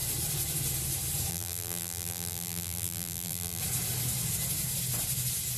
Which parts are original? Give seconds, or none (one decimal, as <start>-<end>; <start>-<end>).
0.0-1.3; 3.6-5.6